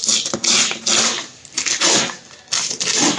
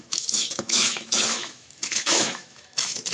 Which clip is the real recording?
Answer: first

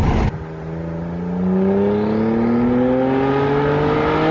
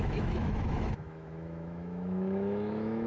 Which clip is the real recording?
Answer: first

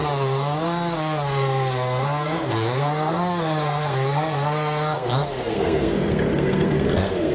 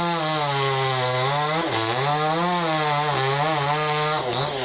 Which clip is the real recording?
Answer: second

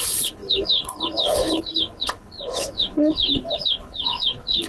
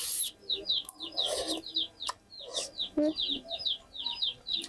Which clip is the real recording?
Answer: second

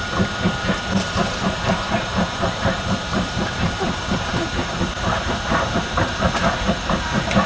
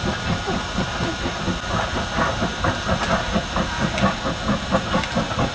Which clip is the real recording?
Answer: second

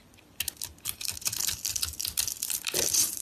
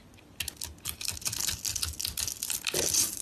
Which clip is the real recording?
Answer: second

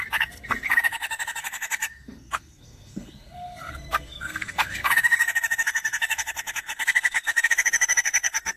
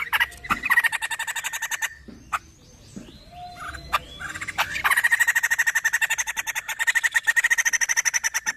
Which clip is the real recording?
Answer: second